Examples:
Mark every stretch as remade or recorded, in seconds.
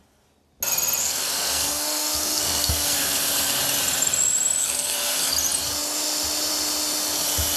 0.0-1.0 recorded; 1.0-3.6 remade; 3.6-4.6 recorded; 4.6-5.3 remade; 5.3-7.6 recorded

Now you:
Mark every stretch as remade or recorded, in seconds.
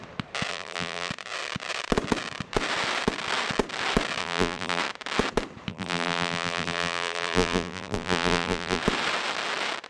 0.0-0.5 recorded; 0.5-1.1 remade; 1.1-4.2 recorded; 4.2-4.8 remade; 4.8-5.7 recorded; 5.7-8.8 remade; 8.8-9.9 recorded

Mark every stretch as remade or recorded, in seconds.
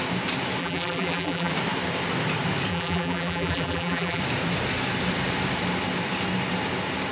0.0-0.6 recorded; 0.6-1.5 remade; 1.5-2.7 recorded; 2.7-4.2 remade; 4.2-7.1 recorded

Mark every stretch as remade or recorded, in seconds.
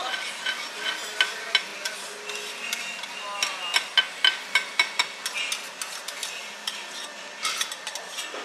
0.0-8.4 recorded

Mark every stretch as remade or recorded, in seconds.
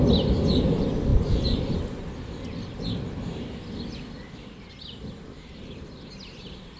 0.0-6.8 recorded